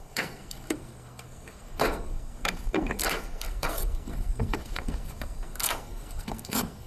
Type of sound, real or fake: fake